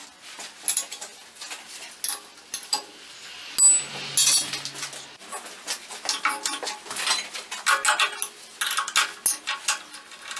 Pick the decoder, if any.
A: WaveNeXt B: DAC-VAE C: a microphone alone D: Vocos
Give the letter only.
C